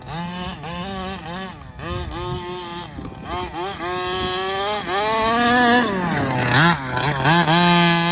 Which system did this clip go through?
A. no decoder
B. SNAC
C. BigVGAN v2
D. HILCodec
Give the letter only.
A